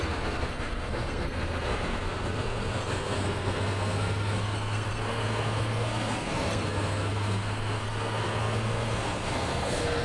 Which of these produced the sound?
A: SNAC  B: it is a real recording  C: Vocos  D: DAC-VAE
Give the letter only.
A